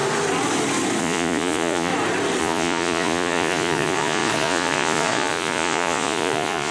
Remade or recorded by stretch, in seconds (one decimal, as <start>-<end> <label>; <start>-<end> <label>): 0.0-1.0 recorded; 1.0-1.9 remade; 1.9-2.4 recorded; 2.4-6.7 remade